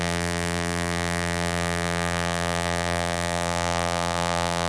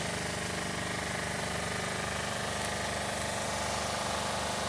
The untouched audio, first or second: second